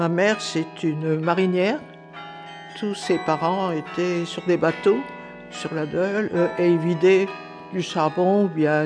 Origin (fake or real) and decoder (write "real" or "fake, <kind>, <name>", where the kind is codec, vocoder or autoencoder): real